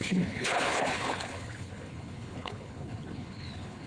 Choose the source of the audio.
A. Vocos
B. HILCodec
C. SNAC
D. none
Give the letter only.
B